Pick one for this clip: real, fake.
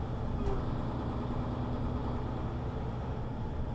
real